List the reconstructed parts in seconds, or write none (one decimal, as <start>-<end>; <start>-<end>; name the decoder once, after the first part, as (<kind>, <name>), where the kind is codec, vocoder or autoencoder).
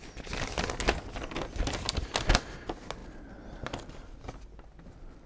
none